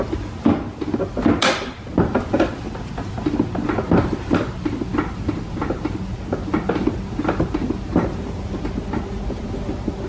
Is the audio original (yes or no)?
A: yes